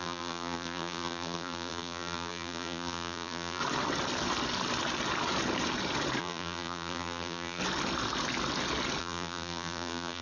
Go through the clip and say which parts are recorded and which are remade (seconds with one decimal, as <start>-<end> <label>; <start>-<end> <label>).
0.0-3.6 remade; 3.6-6.2 recorded; 6.2-7.6 remade; 7.6-9.0 recorded; 9.0-10.2 remade